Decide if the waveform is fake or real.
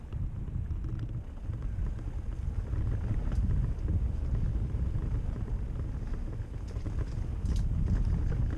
real